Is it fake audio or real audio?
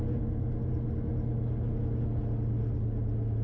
real